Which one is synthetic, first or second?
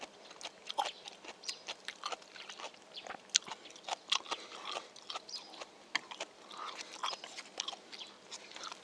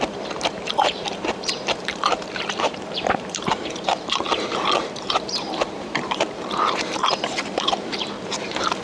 second